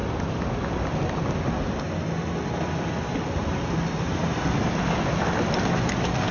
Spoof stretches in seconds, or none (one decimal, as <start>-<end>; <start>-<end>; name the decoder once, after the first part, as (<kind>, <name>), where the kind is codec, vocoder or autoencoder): none